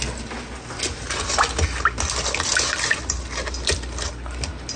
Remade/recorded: recorded